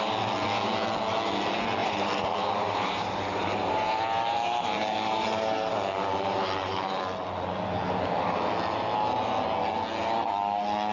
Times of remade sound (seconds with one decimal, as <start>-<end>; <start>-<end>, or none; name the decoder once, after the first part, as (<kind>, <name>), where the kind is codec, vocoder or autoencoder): 1.8-7.0 (vocoder, BigVGAN v2)